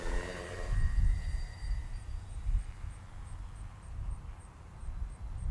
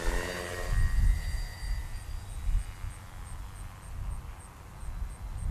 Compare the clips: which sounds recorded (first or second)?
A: second